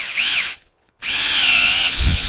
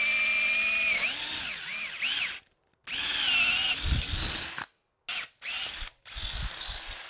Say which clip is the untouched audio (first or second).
second